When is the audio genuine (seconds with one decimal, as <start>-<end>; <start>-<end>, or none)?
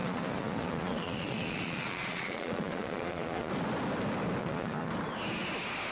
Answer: 3.5-4.4; 4.9-5.9